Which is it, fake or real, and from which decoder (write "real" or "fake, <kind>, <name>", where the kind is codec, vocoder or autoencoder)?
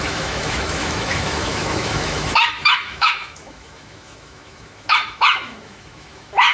fake, autoencoder, DAC-VAE